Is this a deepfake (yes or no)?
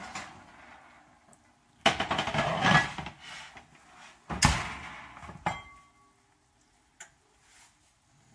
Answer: no